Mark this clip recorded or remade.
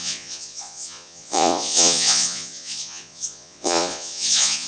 remade